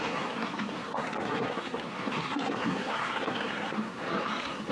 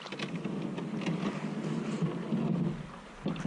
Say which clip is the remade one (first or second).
first